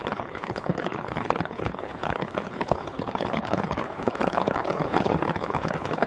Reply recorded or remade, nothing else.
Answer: remade